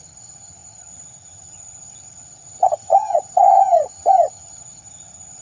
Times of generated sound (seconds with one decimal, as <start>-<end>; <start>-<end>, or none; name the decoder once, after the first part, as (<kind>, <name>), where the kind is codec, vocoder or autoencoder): 0.0-5.4 (vocoder, HiFi-GAN)